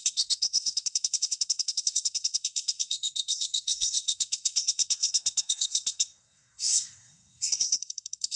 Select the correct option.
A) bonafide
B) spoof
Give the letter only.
B